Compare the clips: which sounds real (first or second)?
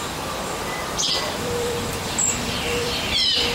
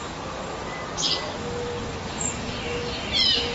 second